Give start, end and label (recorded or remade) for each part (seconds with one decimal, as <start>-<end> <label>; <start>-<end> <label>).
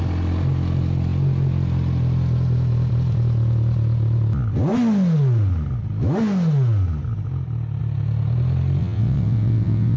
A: 0.0-8.8 recorded; 8.8-10.0 remade